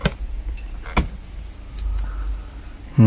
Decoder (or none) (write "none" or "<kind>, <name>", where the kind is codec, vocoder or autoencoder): none